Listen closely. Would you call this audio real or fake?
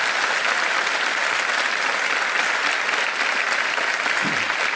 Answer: real